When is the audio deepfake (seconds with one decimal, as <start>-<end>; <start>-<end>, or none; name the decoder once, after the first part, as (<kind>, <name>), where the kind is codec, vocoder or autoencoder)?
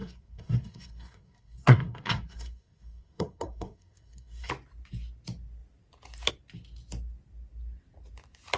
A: 0.0-4.5 (codec, SNAC)